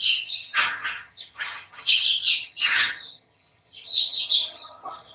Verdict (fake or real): fake